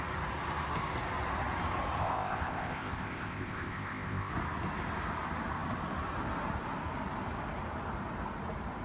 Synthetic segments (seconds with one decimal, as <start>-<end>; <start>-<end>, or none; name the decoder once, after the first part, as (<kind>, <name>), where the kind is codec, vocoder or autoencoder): 2.0-4.3 (codec, ZipCodec)